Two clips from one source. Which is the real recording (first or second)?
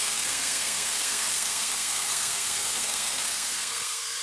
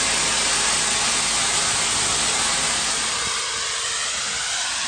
second